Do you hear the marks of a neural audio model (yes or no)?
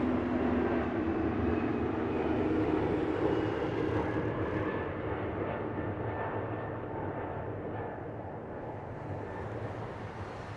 no